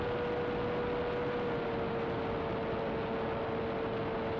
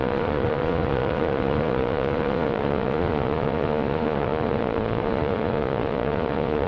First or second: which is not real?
second